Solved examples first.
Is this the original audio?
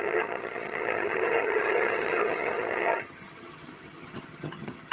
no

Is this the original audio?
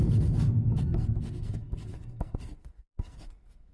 no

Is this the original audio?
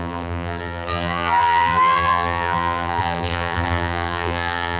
no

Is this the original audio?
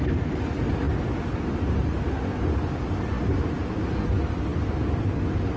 yes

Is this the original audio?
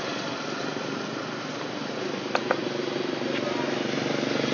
yes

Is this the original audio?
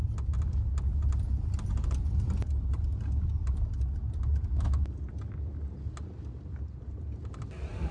yes